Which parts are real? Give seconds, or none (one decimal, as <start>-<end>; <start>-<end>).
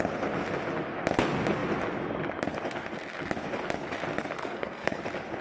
0.0-4.4; 5.0-5.4